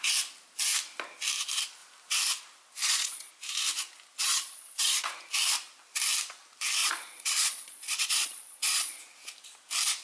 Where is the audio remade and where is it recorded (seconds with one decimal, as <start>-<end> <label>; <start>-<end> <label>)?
0.0-2.8 recorded; 2.8-3.3 remade; 3.3-4.2 recorded; 4.2-5.1 remade; 5.1-6.8 recorded; 6.8-9.0 remade; 9.0-10.0 recorded